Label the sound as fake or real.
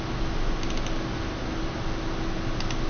real